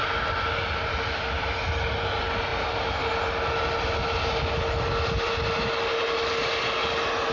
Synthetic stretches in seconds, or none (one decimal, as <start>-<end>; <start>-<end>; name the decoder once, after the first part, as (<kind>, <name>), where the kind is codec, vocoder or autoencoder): none

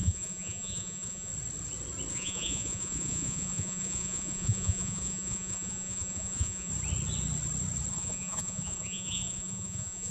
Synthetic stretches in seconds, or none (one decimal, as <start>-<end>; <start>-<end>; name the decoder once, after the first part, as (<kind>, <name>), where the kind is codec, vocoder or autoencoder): 0.0-1.3 (vocoder, Vocos); 2.1-6.7; 7.9-10.1